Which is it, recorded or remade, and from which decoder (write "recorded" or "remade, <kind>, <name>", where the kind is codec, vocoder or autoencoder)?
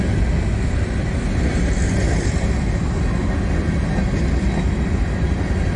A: recorded